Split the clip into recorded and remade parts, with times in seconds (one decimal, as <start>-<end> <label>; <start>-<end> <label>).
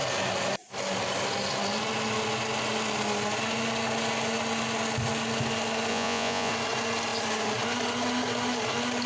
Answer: 0.0-5.9 recorded; 5.9-6.5 remade; 6.5-9.1 recorded